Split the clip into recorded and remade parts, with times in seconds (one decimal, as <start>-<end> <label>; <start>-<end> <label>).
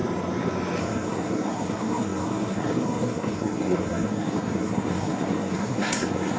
0.0-0.8 recorded; 0.8-6.4 remade